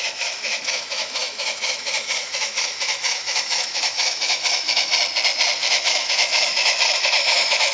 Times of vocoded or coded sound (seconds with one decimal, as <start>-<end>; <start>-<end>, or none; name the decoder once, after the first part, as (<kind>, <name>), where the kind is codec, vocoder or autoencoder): 0.0-4.9 (autoencoder, DAC-VAE); 5.7-7.7